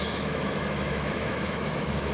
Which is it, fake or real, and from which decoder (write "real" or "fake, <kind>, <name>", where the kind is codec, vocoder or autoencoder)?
fake, autoencoder, DAC-VAE